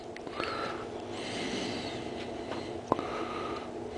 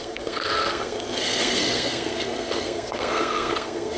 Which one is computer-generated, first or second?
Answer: second